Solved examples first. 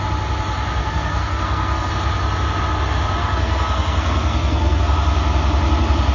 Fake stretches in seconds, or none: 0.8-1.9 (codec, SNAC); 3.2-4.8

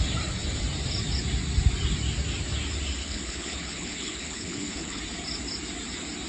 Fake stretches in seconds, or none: 3.0-5.0 (codec, HILCodec)

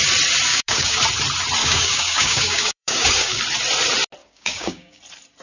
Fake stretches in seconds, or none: 0.5-1.0 (codec, DAC); 1.6-3.4; 4.2-5.0